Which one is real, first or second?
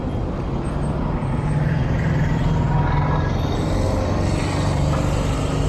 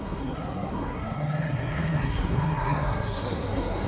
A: first